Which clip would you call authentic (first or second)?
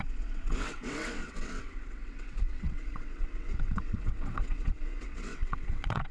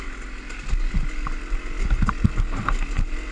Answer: second